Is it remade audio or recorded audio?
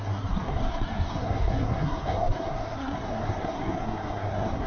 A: remade